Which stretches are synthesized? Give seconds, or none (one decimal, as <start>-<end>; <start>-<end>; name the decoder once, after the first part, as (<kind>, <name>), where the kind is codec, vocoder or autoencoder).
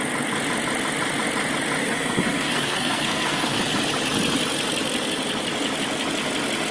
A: 1.8-3.6 (codec, SNAC)